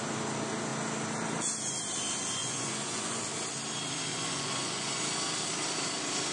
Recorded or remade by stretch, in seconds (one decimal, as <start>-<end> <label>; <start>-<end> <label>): 0.0-2.4 recorded; 2.4-3.2 remade; 3.2-4.1 recorded; 4.1-5.0 remade; 5.0-6.3 recorded